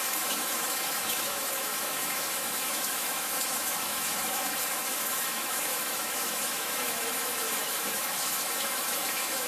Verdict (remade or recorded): remade